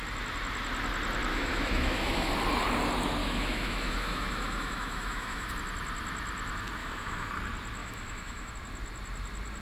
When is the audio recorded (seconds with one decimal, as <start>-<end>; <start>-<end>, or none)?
0.0-1.3; 2.3-3.2; 5.5-6.8; 7.3-7.8; 8.5-9.6